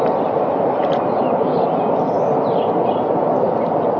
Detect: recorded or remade recorded